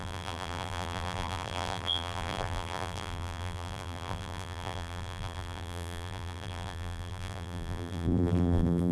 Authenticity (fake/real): fake